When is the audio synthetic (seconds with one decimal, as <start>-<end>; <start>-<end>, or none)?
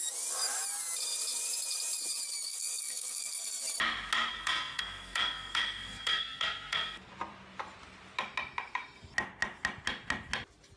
2.5-3.6; 4.3-7.1